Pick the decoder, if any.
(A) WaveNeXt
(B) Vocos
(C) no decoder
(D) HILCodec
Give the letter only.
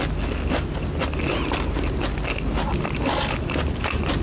C